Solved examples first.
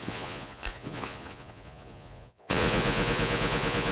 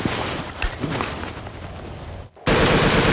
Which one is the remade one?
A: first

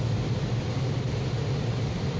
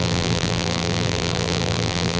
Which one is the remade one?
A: second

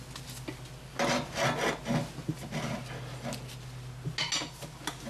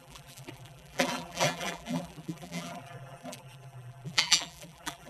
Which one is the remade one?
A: second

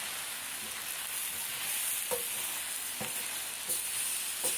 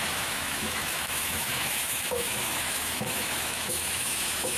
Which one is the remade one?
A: second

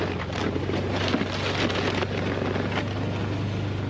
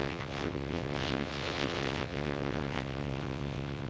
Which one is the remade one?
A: second